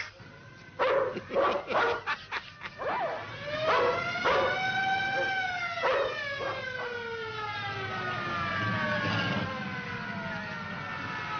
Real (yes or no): yes